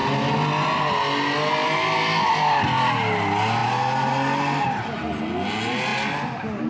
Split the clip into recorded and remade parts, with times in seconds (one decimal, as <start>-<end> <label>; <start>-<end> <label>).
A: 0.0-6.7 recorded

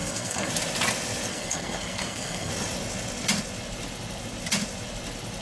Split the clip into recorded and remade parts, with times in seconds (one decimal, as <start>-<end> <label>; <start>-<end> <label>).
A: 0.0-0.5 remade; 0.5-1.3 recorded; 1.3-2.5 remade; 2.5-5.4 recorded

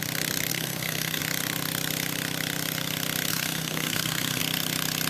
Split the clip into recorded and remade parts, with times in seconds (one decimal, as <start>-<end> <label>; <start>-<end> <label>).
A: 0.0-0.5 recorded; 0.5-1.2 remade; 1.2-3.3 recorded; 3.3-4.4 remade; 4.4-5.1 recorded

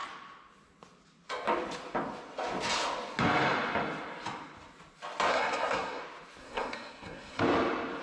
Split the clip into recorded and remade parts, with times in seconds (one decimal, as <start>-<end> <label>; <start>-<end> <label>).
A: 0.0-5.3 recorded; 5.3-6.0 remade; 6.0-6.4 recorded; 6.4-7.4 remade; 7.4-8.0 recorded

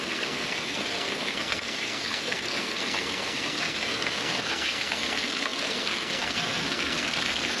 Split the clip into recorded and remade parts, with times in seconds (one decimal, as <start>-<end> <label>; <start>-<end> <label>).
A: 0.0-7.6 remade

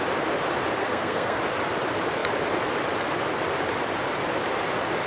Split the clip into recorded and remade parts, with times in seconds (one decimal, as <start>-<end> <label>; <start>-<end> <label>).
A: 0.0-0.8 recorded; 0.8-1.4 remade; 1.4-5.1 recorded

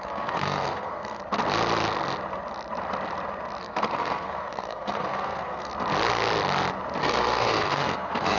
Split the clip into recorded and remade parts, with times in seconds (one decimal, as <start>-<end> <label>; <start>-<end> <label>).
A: 0.0-1.2 remade; 1.2-3.6 recorded; 3.6-5.7 remade; 5.7-7.0 recorded; 7.0-8.4 remade

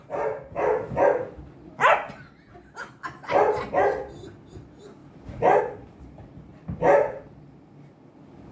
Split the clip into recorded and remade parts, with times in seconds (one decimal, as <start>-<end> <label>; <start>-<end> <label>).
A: 0.0-8.5 recorded